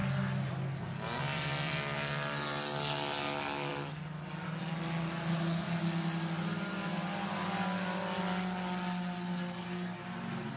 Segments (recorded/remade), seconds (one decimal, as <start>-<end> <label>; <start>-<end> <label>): 0.0-10.6 recorded